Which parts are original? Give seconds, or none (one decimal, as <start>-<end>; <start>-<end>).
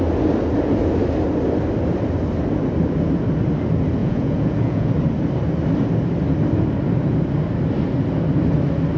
0.0-4.0; 4.9-9.0